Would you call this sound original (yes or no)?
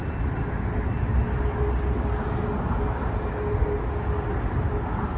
yes